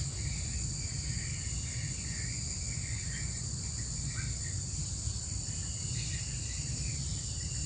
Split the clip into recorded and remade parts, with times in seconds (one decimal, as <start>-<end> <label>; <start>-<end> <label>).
0.0-1.8 recorded; 1.8-4.2 remade; 4.2-7.7 recorded